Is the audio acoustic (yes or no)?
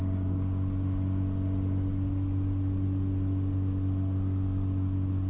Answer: yes